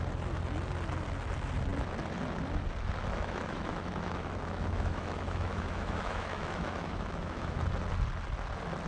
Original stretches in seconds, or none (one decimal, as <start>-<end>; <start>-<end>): 0.0-3.0; 7.6-8.9